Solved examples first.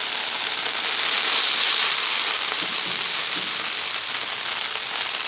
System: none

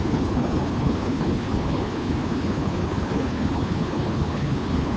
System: codec, HILCodec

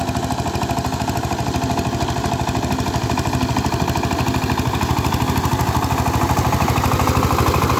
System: none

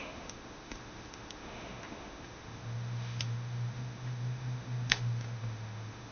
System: autoencoder, DAC-VAE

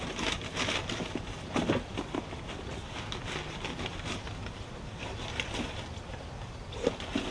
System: none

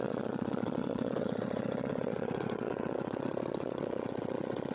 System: vocoder, WaveNeXt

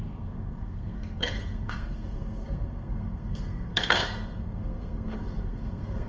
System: codec, SNAC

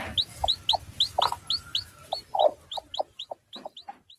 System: none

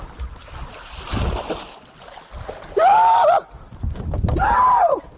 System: none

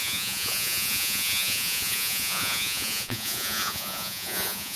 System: vocoder, Vocos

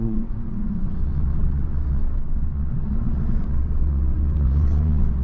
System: vocoder, WaveNeXt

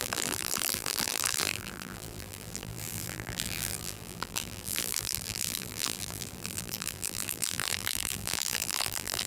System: vocoder, BigVGAN v2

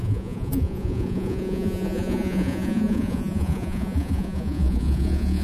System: vocoder, Vocos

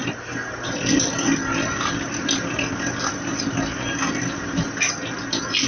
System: none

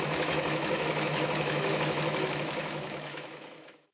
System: autoencoder, DAC-VAE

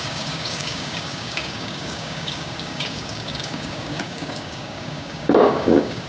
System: codec, DAC